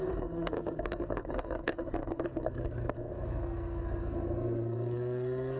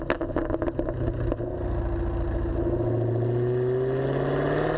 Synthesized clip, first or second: first